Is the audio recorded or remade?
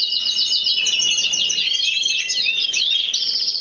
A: recorded